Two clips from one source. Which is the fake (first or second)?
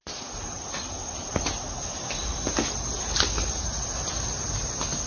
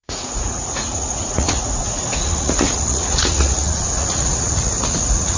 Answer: second